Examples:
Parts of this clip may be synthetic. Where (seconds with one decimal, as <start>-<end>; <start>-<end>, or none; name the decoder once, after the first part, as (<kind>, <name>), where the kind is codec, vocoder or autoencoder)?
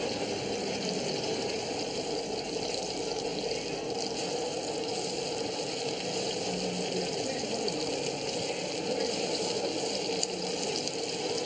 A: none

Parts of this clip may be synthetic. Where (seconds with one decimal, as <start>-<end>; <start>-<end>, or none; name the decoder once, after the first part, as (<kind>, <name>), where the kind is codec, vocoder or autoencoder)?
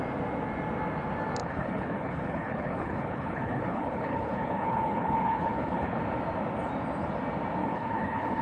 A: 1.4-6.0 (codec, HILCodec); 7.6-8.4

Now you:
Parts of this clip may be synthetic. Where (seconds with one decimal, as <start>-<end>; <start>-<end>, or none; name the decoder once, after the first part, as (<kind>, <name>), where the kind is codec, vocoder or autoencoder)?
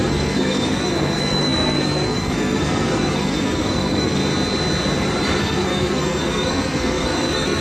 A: 0.0-4.2 (codec, SNAC); 5.4-7.6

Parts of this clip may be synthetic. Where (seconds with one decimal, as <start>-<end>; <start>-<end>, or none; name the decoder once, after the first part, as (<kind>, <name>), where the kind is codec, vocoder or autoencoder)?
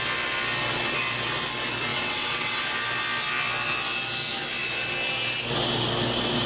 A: 1.9-2.6 (vocoder, WaveNeXt)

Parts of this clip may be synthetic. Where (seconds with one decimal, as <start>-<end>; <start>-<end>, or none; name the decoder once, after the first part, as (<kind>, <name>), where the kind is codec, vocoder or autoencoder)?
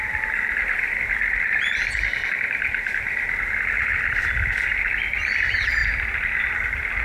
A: none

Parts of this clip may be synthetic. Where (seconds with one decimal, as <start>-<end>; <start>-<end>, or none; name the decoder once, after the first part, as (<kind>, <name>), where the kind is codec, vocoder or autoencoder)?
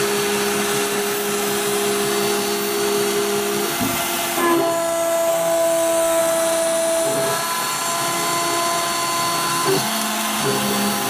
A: 5.3-6.2 (codec, SNAC); 9.5-10.4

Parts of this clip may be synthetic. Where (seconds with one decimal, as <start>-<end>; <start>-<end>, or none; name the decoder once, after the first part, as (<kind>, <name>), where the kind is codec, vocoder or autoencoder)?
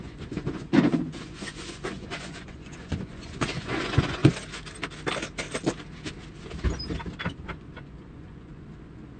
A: 0.0-4.2 (vocoder, Vocos); 7.4-9.2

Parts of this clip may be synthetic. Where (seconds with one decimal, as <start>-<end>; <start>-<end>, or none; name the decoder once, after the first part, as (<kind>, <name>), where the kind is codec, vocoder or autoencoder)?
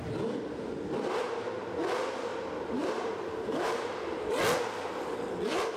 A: 2.3-4.4 (vocoder, BigVGAN v2)